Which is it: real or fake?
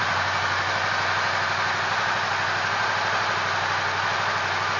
real